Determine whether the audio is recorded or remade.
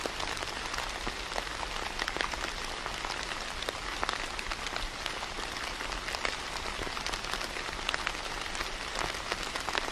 recorded